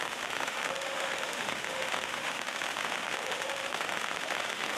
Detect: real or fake fake